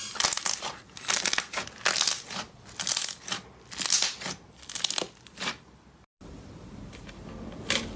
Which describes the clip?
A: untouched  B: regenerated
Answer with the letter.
A